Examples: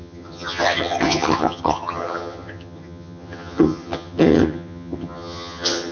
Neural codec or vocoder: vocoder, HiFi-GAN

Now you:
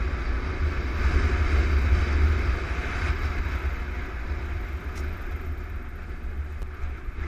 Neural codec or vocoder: none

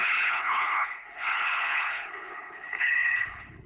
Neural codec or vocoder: codec, HILCodec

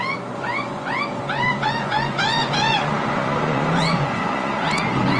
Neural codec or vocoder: vocoder, Vocos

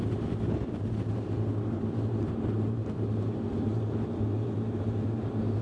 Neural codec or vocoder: vocoder, BigVGAN v2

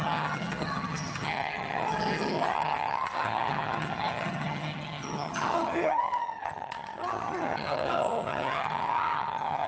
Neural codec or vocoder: vocoder, HiFi-GAN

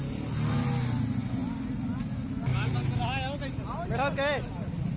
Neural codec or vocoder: none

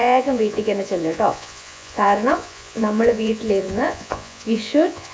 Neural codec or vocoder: vocoder, Vocos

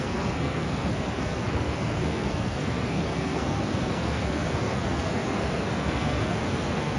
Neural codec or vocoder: codec, SNAC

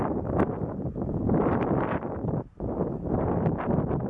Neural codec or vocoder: vocoder, BigVGAN v2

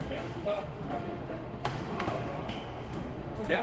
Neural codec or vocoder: autoencoder, DAC-VAE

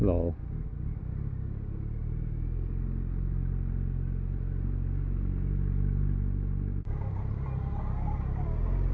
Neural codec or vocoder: none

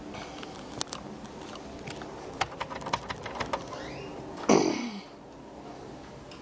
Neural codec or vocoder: none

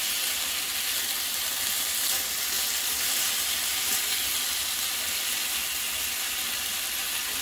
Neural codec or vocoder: none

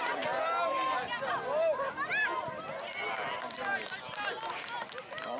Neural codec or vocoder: none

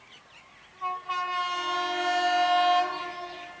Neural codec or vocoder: none